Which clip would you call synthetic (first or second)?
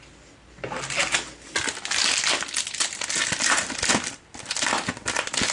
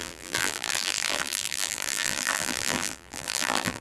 second